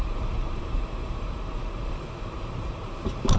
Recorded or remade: remade